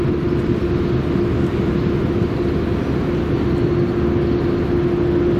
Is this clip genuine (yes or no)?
yes